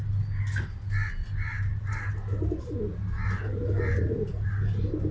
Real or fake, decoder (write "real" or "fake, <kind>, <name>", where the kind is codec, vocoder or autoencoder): real